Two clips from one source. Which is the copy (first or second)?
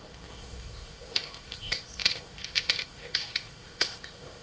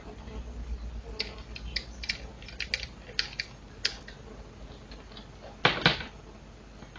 first